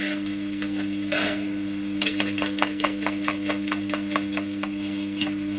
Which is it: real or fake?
fake